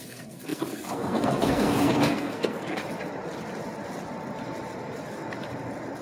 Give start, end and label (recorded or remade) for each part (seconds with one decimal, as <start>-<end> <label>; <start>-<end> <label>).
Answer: 0.0-2.8 remade; 2.8-6.0 recorded